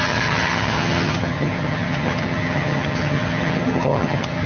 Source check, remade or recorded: remade